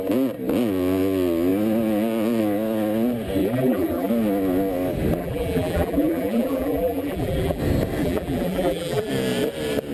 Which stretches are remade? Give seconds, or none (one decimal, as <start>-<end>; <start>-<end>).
3.4-4.1; 5.2-7.6; 8.0-9.1